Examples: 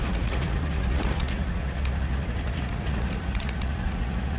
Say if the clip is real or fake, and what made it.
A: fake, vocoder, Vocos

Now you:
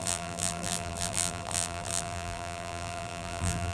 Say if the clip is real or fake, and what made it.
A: fake, vocoder, BigVGAN v2